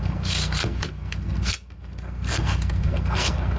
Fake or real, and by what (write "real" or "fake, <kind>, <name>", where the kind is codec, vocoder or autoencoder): fake, codec, SNAC